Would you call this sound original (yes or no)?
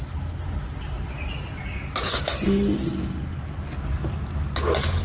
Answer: yes